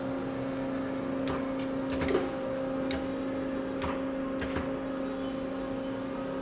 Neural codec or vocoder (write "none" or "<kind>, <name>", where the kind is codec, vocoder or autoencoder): none